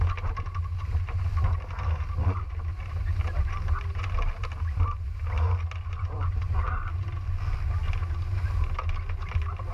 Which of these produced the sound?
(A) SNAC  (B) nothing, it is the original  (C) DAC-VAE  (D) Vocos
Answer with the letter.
B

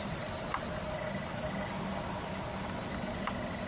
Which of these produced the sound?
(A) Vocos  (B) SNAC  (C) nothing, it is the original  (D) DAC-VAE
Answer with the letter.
C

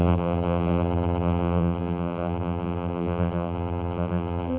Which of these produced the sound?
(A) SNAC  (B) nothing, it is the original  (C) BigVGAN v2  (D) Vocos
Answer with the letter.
C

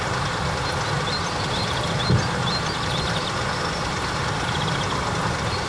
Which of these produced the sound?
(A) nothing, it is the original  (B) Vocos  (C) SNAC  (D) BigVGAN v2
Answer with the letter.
A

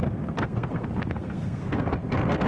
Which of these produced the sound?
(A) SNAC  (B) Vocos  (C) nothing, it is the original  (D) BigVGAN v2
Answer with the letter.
A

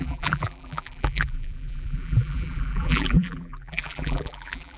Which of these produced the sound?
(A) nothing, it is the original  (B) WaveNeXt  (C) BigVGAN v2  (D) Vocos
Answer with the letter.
C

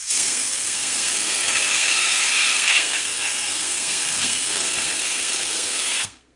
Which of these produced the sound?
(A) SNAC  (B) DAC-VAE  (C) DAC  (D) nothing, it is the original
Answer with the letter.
A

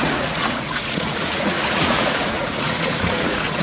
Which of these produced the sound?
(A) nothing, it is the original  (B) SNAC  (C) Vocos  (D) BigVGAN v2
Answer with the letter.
C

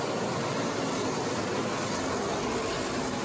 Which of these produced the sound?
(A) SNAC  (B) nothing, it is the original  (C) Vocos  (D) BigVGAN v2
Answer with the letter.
B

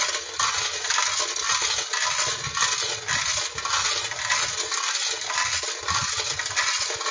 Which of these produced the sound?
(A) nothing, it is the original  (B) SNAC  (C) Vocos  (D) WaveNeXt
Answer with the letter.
A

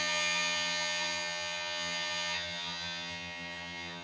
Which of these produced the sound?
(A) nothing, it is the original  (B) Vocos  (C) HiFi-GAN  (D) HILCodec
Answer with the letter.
C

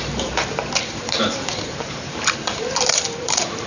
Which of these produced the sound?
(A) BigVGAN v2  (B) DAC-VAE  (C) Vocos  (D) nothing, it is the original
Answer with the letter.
A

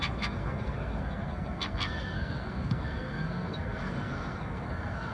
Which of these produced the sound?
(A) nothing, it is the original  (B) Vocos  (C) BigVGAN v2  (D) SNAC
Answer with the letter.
D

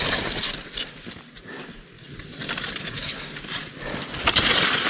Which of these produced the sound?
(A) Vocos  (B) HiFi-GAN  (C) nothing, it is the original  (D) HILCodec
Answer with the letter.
C